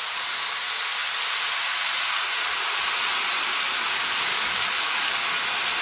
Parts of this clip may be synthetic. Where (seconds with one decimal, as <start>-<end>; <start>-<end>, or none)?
4.3-5.1

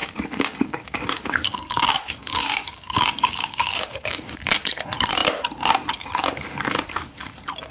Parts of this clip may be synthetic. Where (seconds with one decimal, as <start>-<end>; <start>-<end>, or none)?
0.0-4.4

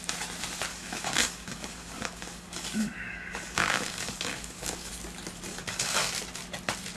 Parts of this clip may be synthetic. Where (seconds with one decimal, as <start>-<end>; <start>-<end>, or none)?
0.7-4.9; 5.5-6.1

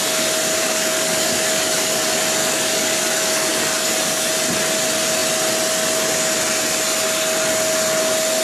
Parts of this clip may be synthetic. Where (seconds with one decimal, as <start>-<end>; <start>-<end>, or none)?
0.6-2.0; 2.4-4.3

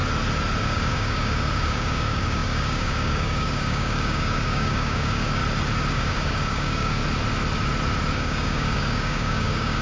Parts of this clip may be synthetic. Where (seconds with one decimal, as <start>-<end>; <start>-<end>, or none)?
0.6-5.4; 5.9-7.0; 8.1-9.8

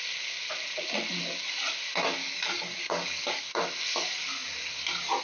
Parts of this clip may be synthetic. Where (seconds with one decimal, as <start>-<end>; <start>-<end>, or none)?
2.2-3.4

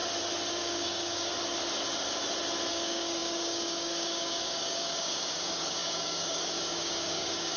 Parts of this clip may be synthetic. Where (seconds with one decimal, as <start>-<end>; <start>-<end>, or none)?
0.5-1.3; 2.7-7.6